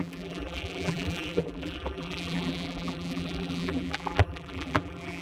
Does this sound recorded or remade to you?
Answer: remade